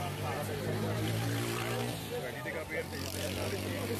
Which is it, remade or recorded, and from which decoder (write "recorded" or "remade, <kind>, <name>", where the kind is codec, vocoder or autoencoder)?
recorded